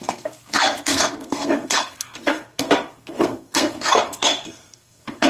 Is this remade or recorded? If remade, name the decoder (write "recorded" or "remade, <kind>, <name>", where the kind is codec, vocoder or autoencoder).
remade, codec, SNAC